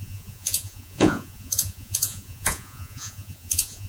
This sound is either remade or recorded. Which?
remade